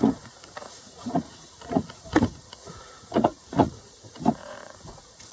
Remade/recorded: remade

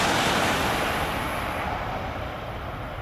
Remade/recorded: recorded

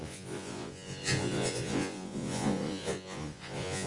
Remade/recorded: remade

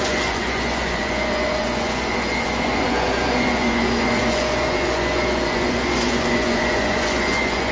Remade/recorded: remade